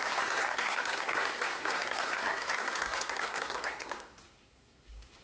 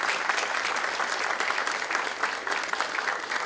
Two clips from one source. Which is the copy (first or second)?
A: first